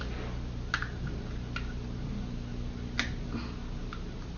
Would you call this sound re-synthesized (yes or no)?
no